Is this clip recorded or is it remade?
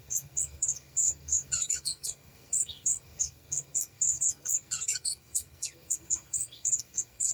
remade